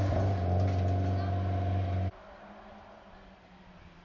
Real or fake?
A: real